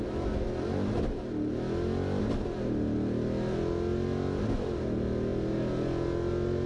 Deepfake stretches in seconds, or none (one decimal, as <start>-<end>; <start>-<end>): none